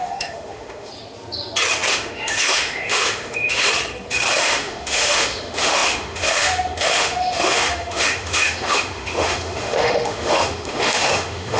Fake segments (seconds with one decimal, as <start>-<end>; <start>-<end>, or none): 0.0-0.9; 1.9-3.7; 4.4-11.6